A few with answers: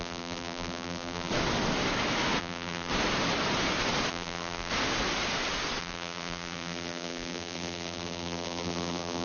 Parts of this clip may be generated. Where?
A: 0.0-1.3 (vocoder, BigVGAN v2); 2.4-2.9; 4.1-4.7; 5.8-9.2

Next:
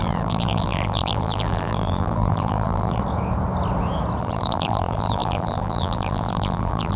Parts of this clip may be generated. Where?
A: 0.0-3.0 (vocoder, BigVGAN v2); 4.2-7.0

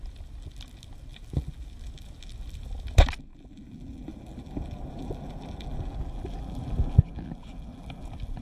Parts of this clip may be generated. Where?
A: 1.1-1.7 (vocoder, BigVGAN v2); 3.3-8.4

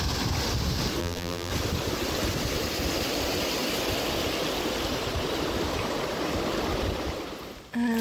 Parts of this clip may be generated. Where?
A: 1.0-1.5 (vocoder, BigVGAN v2)

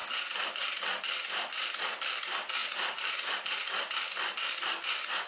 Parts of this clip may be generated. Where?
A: 0.0-0.5 (vocoder, BigVGAN v2); 2.6-3.7

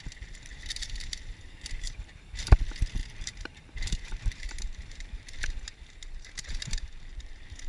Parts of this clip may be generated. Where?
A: 0.5-2.4 (vocoder, BigVGAN v2); 3.0-7.7